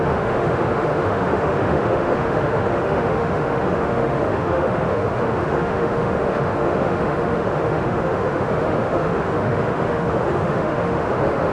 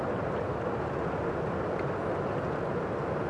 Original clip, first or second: second